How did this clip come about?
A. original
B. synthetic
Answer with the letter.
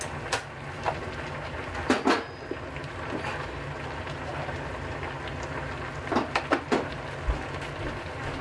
A